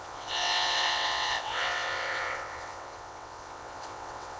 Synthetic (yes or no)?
yes